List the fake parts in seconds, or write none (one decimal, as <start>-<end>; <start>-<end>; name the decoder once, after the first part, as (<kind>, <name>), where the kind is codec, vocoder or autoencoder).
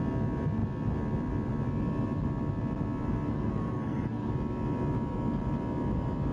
3.3-4.3 (codec, SNAC)